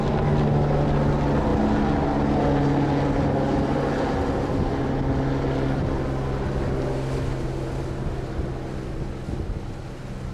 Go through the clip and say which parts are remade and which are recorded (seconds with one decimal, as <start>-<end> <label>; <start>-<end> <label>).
0.0-10.3 recorded

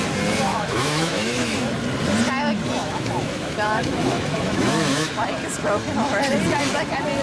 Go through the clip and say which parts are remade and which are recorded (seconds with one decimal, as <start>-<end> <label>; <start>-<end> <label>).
0.0-0.5 recorded; 0.5-1.6 remade; 1.6-2.8 recorded; 2.8-5.1 remade; 5.1-7.2 recorded

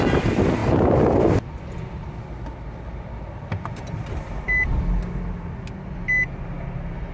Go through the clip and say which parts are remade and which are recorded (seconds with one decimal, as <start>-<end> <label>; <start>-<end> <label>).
0.0-7.1 recorded

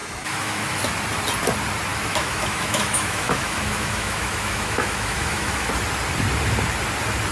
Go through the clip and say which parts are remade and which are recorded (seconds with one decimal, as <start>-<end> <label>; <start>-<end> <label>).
0.0-0.8 remade; 0.8-1.9 recorded; 1.9-5.7 remade; 5.7-7.3 recorded

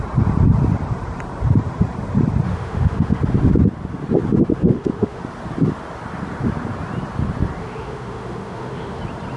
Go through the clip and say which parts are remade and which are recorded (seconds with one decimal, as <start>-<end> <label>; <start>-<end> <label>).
0.0-2.5 recorded; 2.5-3.2 remade; 3.2-4.5 recorded; 4.5-5.2 remade; 5.2-7.6 recorded; 7.6-9.0 remade; 9.0-9.4 recorded